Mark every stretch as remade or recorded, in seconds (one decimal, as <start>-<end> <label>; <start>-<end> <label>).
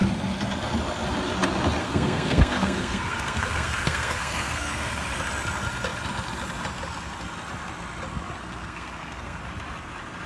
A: 0.0-1.8 recorded; 1.8-4.9 remade; 4.9-8.4 recorded; 8.4-9.4 remade; 9.4-10.3 recorded